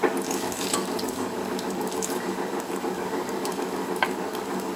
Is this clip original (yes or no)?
no